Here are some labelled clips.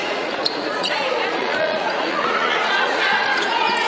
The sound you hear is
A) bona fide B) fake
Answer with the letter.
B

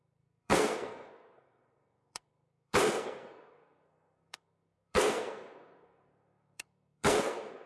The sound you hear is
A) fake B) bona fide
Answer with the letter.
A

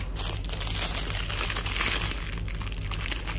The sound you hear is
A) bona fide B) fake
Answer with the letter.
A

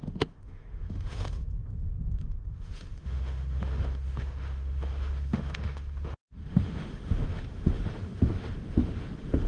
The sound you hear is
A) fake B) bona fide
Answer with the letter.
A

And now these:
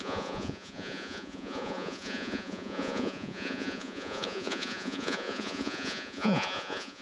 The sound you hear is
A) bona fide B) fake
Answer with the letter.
B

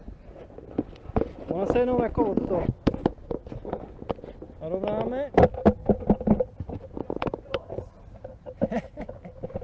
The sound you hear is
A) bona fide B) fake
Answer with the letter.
A